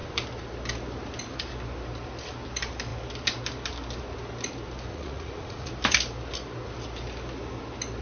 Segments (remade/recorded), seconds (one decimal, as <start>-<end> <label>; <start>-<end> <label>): 0.0-4.9 recorded; 4.9-5.7 remade; 5.7-8.0 recorded

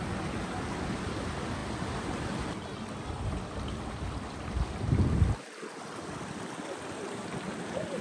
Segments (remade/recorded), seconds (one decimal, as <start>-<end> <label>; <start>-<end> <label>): 0.0-8.0 recorded

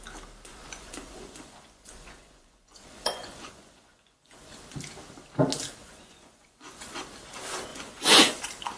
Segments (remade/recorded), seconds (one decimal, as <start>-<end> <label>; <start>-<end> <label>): 0.0-0.5 recorded; 0.5-4.6 remade; 4.6-5.8 recorded; 5.8-7.0 remade; 7.0-7.7 recorded; 7.7-8.4 remade; 8.4-8.8 recorded